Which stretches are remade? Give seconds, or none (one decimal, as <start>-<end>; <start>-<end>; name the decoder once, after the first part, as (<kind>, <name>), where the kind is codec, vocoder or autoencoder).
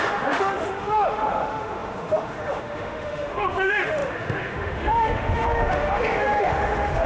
0.0-7.1 (autoencoder, DAC-VAE)